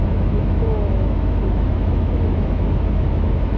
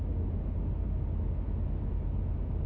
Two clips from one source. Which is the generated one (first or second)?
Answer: first